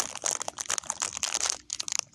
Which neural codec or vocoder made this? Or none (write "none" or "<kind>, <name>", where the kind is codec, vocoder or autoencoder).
none